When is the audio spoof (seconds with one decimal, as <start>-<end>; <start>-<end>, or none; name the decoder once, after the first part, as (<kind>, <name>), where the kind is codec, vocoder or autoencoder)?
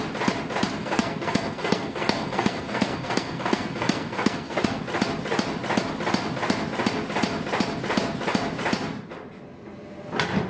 0.8-4.8 (codec, SNAC)